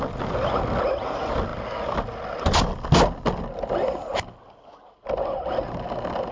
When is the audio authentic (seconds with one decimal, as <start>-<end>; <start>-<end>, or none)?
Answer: 0.0-6.3